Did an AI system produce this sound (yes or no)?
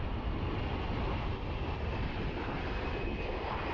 no